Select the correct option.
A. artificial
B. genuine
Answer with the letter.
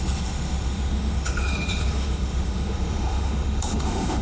A